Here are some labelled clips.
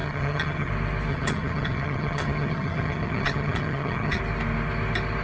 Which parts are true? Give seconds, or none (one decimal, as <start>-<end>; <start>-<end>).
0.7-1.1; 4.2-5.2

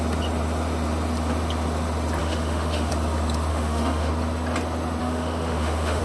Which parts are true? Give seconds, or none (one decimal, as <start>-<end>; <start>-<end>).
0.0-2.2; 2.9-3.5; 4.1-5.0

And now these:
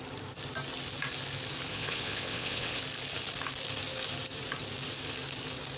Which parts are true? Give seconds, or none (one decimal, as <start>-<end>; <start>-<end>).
0.0-1.7; 2.8-5.8

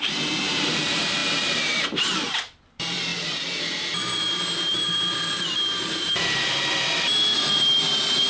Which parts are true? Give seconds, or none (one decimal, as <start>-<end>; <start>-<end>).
none

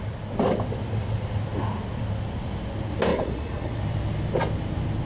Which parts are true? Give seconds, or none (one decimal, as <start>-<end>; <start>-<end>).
0.0-3.1; 3.8-5.1

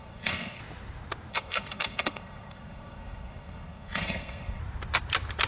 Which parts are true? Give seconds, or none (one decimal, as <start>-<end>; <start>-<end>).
0.6-1.3; 4.6-5.5

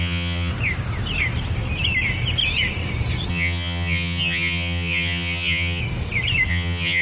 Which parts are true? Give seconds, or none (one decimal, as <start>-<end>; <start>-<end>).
0.5-3.3; 5.8-6.5